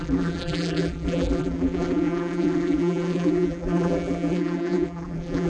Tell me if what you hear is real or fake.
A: fake